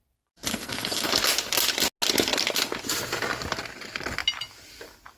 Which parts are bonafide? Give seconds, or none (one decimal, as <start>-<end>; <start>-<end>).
0.0-0.5; 1.1-5.2